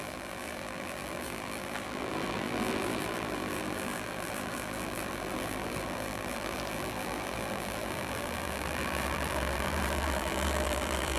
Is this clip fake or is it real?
fake